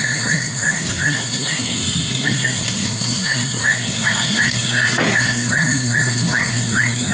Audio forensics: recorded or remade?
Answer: remade